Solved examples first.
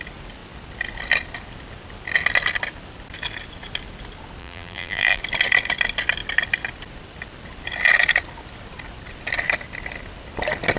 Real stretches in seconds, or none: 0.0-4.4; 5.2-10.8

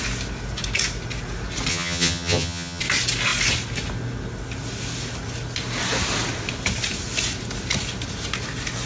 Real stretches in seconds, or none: 0.0-1.7; 2.8-8.9

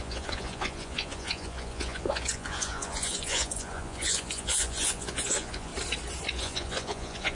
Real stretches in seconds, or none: 5.7-6.3

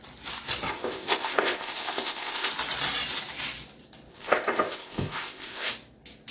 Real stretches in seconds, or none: 0.0-0.7; 2.5-4.1; 5.7-6.3

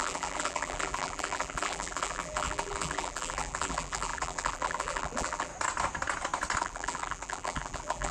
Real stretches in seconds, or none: 5.5-6.6